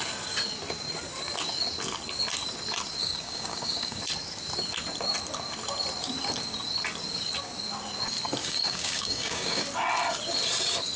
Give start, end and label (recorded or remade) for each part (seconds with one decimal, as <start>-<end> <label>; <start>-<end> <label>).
0.0-3.0 recorded; 3.0-4.0 remade; 4.0-8.4 recorded; 8.4-9.6 remade; 9.6-11.0 recorded